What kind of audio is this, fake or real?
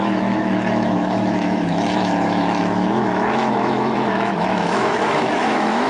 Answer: fake